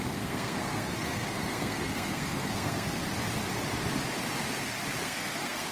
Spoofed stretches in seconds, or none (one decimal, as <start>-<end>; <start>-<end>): 0.0-3.0; 5.0-5.7